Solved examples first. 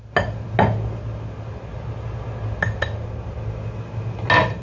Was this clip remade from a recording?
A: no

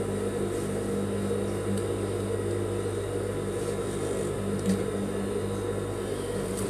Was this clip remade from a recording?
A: no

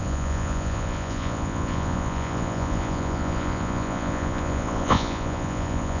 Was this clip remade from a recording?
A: yes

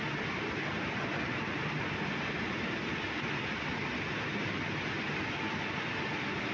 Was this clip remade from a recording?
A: no